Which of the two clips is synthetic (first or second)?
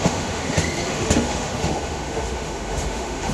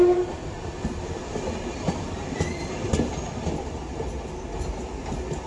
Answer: first